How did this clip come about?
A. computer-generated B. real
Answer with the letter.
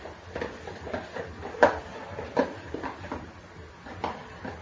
B